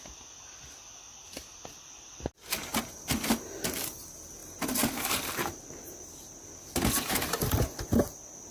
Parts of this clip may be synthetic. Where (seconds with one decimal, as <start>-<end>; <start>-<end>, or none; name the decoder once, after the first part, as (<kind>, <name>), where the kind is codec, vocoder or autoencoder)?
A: none